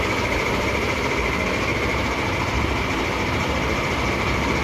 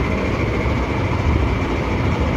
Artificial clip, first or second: second